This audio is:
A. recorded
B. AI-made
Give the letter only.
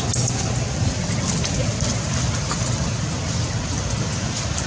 A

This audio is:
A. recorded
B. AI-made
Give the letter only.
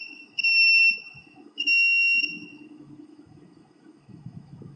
B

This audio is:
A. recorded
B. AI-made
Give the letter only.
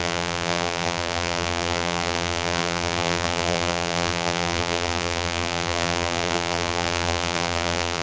B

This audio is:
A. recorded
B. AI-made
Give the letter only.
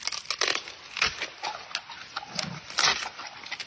A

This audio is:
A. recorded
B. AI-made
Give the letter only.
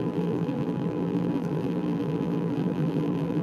B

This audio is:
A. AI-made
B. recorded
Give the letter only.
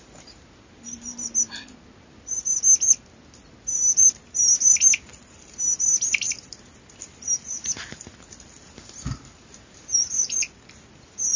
B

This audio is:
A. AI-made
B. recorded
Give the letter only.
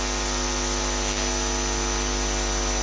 B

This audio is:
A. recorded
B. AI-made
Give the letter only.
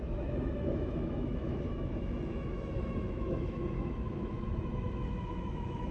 B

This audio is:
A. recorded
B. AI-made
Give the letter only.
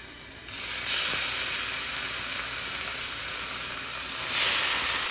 A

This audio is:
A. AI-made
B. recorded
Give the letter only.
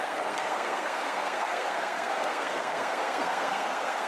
A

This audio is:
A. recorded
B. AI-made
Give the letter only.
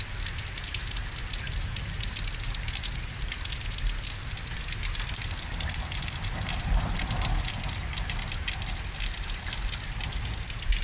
A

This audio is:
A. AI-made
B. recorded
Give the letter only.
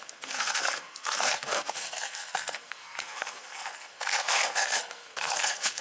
A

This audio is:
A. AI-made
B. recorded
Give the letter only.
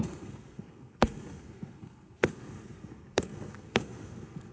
A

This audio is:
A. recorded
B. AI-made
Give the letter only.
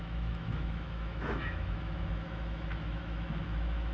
B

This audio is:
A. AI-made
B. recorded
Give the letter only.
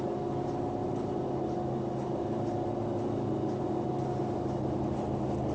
B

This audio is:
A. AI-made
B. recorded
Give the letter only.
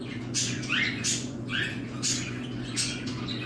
A